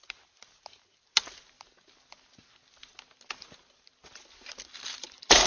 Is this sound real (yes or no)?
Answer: yes